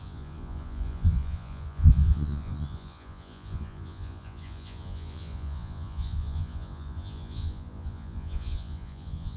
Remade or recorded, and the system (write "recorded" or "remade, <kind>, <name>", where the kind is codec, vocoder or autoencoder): remade, vocoder, Vocos